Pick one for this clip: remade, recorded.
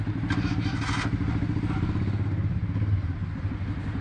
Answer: recorded